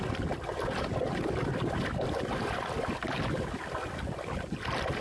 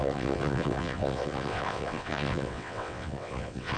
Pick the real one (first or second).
first